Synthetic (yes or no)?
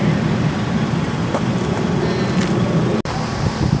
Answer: no